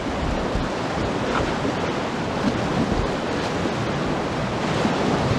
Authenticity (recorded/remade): recorded